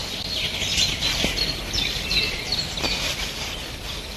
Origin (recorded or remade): recorded